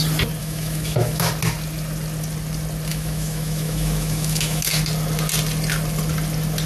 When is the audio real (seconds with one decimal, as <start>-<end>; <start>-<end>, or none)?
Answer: 0.0-0.4; 1.3-2.9; 4.8-6.7